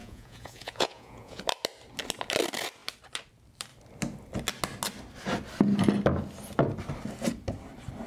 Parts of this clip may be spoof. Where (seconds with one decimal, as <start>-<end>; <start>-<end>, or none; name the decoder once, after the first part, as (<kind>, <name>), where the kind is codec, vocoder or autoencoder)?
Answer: 0.0-1.4 (vocoder, Vocos)